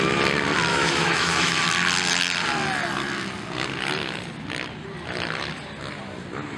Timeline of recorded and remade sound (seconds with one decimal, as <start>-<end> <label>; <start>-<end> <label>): 0.0-0.7 recorded; 0.7-1.6 remade; 1.6-6.6 recorded